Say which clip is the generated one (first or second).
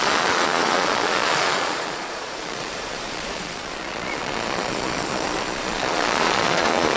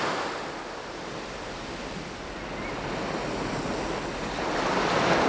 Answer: first